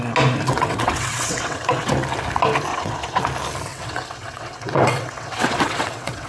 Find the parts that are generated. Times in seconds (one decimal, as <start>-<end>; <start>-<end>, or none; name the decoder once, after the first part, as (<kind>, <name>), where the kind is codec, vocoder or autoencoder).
0.5-1.9 (vocoder, WaveNeXt); 2.7-3.2; 3.7-6.3